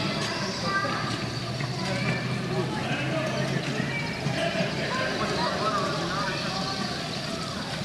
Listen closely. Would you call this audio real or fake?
real